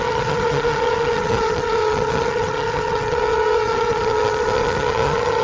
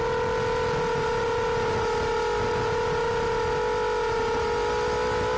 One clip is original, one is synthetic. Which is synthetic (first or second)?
first